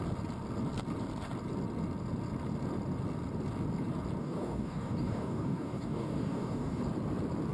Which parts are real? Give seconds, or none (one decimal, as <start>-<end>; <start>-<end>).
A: 0.0-4.2; 6.8-7.5